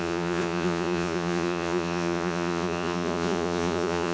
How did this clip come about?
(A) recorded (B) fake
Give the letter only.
B